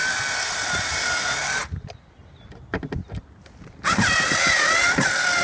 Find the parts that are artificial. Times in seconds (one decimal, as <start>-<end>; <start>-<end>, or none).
none